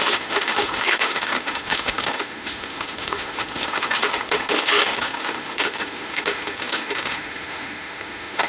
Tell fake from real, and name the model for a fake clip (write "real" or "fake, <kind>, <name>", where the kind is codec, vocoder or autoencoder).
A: fake, autoencoder, DAC-VAE